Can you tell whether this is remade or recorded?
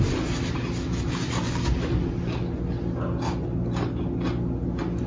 recorded